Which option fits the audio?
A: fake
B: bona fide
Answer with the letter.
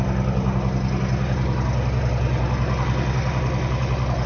B